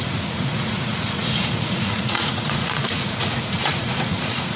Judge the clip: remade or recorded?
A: remade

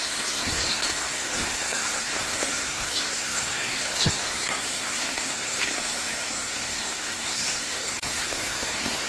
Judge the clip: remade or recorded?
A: remade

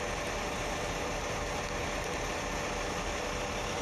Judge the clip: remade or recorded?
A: recorded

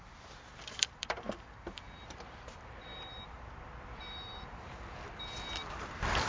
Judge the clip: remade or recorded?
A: remade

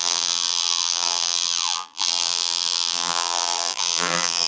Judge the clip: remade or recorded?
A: remade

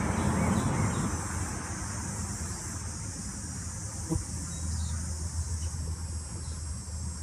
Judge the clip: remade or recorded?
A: recorded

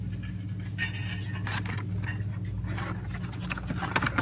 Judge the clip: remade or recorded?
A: recorded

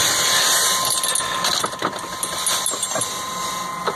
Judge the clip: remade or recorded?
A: recorded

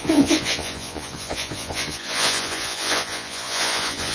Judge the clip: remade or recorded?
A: remade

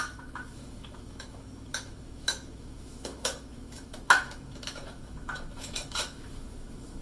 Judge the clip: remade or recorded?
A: remade